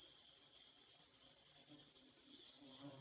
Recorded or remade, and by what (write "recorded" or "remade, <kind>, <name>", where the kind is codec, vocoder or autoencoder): remade, vocoder, WaveNeXt